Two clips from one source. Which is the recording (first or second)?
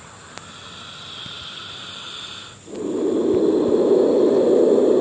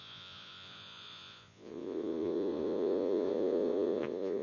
first